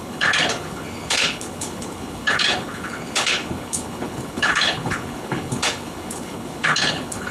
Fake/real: fake